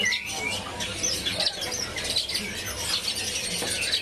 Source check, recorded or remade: recorded